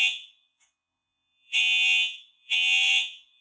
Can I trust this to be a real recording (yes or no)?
no